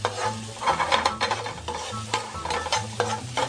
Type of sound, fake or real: real